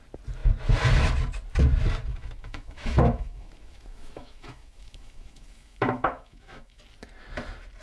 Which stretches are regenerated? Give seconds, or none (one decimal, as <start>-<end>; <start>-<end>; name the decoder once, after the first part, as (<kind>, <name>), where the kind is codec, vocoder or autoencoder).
2.1-6.8 (autoencoder, DAC-VAE)